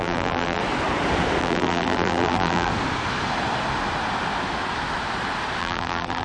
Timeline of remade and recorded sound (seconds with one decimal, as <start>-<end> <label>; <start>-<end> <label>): 0.0-0.6 remade; 0.6-1.4 recorded; 1.4-2.7 remade; 2.7-5.6 recorded; 5.6-6.2 remade